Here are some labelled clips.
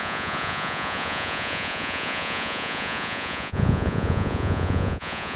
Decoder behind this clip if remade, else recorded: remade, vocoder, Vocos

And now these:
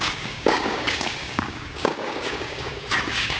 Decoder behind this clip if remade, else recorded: remade, codec, DAC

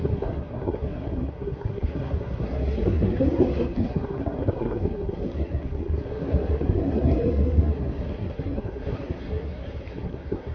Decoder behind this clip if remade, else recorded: remade, codec, SNAC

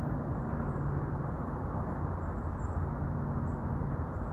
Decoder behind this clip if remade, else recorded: recorded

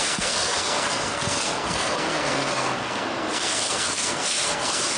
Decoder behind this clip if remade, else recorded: remade, codec, SNAC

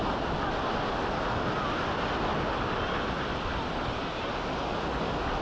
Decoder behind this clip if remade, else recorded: recorded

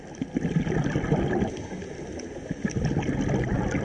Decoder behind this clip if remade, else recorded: recorded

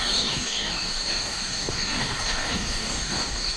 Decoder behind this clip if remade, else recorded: remade, codec, DAC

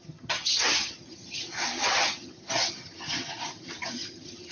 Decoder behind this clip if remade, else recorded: remade, vocoder, HiFi-GAN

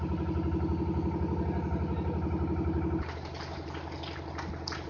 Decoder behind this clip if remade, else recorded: recorded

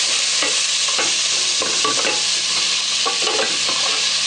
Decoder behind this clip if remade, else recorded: remade, vocoder, BigVGAN v2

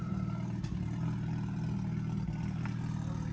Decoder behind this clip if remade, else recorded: recorded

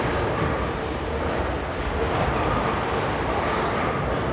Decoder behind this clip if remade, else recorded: recorded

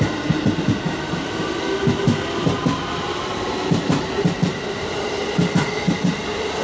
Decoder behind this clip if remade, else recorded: recorded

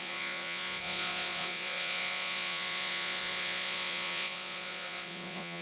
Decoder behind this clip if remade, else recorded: remade, vocoder, Vocos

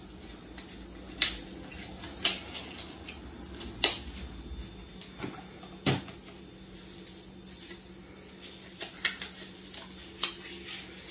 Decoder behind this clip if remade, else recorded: recorded